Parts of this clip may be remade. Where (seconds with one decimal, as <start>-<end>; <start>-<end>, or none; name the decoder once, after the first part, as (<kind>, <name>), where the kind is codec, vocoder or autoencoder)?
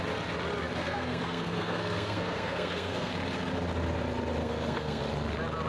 0.8-3.1 (codec, SNAC); 4.4-5.0